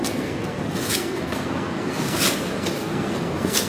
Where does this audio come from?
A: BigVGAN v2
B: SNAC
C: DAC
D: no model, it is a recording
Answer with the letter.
B